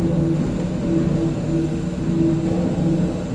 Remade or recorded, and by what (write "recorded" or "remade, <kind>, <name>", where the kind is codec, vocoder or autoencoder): recorded